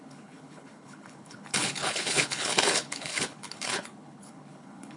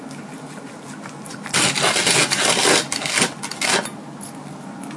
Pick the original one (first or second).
second